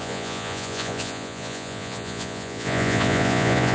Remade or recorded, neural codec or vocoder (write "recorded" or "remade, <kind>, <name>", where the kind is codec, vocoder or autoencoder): remade, vocoder, Vocos